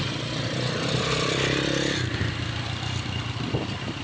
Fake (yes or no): yes